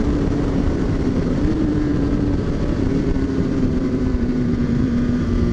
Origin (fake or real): fake